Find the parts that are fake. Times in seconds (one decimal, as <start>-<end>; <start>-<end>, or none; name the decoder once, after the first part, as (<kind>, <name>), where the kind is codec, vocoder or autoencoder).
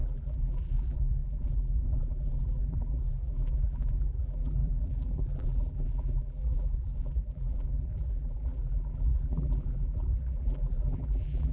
0.0-11.5 (vocoder, BigVGAN v2)